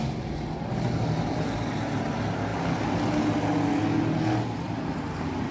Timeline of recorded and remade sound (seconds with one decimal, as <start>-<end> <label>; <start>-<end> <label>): 0.0-5.5 recorded